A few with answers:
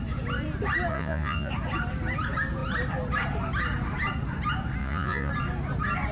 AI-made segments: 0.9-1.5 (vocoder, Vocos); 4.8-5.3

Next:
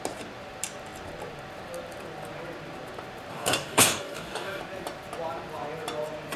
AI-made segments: 3.3-4.6 (codec, DAC)

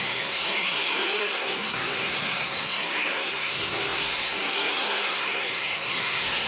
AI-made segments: 0.0-6.5 (codec, SNAC)

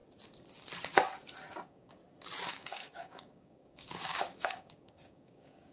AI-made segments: 1.5-2.0 (codec, DAC); 2.5-5.7

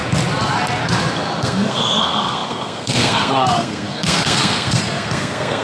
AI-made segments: 1.4-5.6 (codec, SNAC)

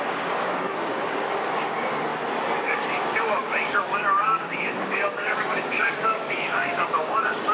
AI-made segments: 0.0-2.1 (codec, DAC); 2.6-7.5

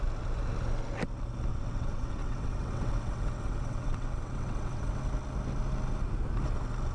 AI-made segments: 1.5-5.0 (vocoder, WaveNeXt)